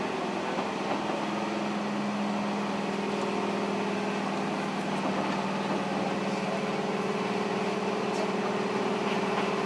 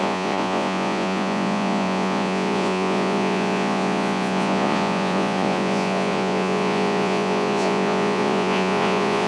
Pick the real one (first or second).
first